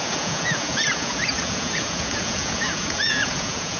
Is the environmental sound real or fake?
fake